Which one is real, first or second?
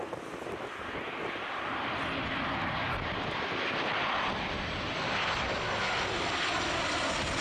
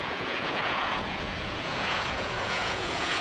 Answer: first